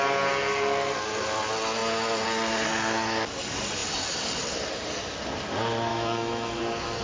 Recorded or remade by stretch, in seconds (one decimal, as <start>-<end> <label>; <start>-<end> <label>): 0.0-5.9 recorded; 5.9-6.6 remade; 6.6-7.0 recorded